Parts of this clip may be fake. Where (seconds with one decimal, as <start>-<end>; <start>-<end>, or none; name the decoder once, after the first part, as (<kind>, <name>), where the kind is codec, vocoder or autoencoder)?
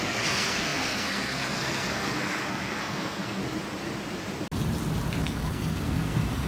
0.0-3.4 (codec, SNAC); 5.2-6.5